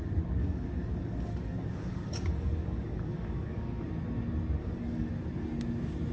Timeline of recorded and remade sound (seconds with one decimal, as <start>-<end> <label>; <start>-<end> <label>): 0.0-0.4 recorded; 0.4-3.9 remade; 3.9-4.6 recorded; 4.6-5.1 remade; 5.1-6.1 recorded

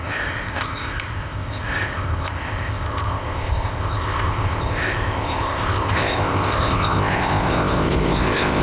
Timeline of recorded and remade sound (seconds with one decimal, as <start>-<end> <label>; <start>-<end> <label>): 0.0-8.6 remade

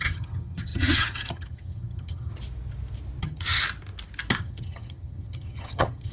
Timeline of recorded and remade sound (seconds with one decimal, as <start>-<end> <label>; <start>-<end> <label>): 0.0-2.3 remade; 2.3-3.2 recorded; 3.2-3.6 remade; 3.6-4.4 recorded; 4.4-6.1 remade

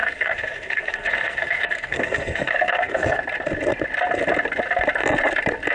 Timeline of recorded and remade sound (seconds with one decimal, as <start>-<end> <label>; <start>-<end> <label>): 0.0-3.2 remade; 3.2-5.7 recorded

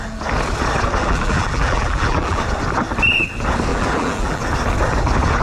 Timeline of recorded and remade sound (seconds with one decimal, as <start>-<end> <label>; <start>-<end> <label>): 0.0-1.0 recorded; 1.0-2.4 remade; 2.4-3.7 recorded; 3.7-4.4 remade; 4.4-5.4 recorded

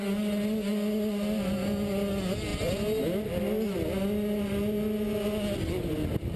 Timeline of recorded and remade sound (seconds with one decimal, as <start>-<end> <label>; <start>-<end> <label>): 0.0-6.4 recorded